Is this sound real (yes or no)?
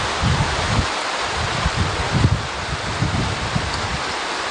yes